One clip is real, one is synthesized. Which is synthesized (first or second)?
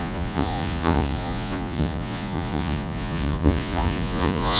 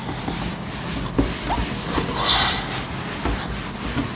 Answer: first